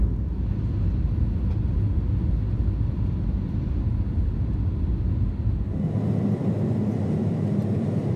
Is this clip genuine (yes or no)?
yes